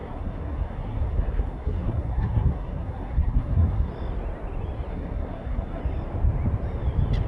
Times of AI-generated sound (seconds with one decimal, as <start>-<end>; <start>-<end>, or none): 0.0-3.9; 4.9-5.8